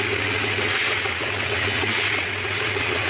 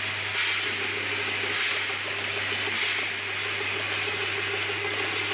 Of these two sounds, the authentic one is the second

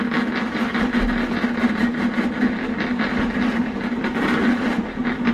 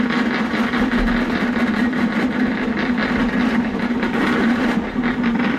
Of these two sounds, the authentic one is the first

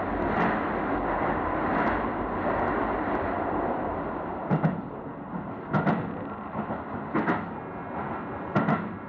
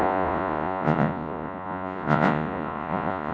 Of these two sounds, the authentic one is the first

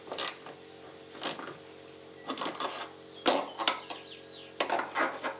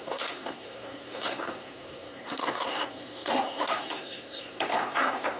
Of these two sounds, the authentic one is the first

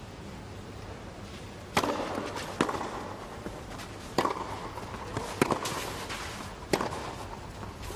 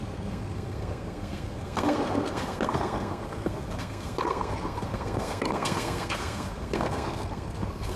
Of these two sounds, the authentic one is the first